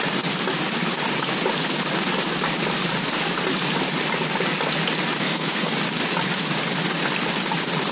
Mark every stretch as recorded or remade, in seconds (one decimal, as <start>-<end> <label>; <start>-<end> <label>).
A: 0.0-5.2 recorded; 5.2-5.7 remade; 5.7-7.9 recorded